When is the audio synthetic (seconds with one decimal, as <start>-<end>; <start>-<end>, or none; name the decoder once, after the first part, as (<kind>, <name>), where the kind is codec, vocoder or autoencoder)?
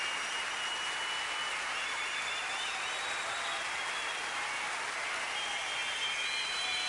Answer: none